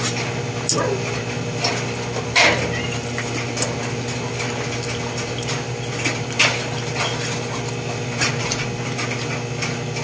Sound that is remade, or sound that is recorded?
recorded